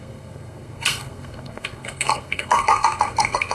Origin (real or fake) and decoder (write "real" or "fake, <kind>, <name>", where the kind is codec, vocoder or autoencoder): fake, codec, SNAC